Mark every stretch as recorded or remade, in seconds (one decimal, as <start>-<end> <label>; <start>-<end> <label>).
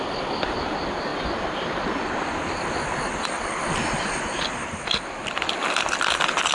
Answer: 0.0-1.1 recorded; 1.1-3.5 remade; 3.5-6.5 recorded